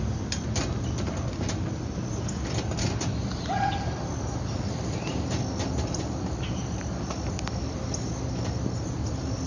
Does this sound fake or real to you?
real